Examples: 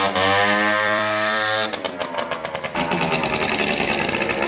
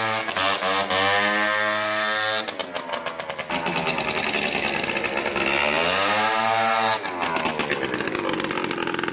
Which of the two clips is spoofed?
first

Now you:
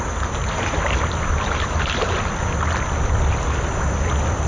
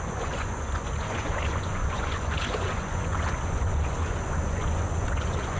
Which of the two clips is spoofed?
second